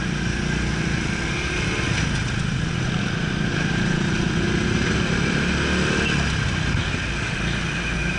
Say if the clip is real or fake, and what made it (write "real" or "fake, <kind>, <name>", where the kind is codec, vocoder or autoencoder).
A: real